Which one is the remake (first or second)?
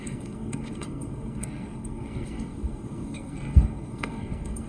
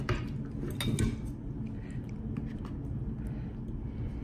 first